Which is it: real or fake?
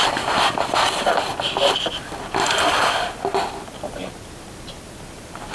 real